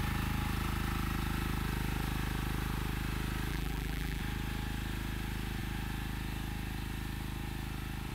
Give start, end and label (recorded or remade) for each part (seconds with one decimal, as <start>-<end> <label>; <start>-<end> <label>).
0.0-3.5 recorded; 3.5-4.2 remade; 4.2-8.1 recorded

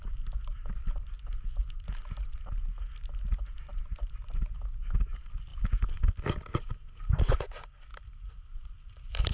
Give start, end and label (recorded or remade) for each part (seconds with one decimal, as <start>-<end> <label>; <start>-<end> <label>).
0.0-9.3 recorded